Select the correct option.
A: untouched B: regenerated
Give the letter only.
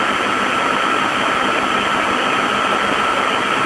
A